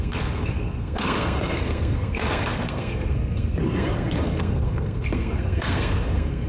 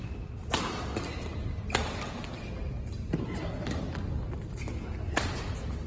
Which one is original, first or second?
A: second